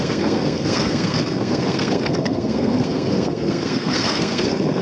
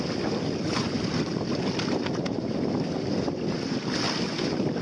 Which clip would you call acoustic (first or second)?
second